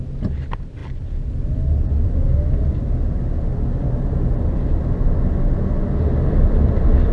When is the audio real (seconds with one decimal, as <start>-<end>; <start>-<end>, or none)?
0.0-7.1